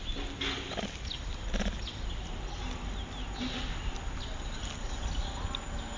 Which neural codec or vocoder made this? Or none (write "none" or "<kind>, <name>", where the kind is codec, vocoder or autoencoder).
none